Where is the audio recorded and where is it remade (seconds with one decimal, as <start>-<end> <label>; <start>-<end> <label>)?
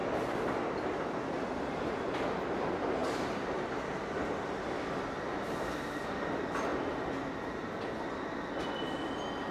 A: 0.0-9.5 recorded